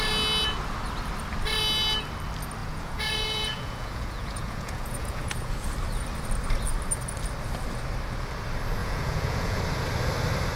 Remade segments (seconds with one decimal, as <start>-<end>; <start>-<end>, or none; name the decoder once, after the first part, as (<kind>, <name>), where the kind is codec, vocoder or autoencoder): 2.6-5.5 (vocoder, Vocos); 8.8-9.6